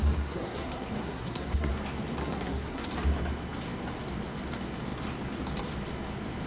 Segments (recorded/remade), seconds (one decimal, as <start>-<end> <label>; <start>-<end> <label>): 0.0-1.7 remade; 1.7-2.2 recorded; 2.2-2.9 remade; 2.9-6.5 recorded